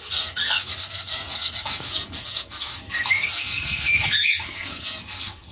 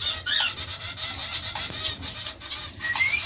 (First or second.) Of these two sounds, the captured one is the second